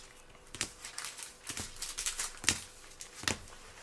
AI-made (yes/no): no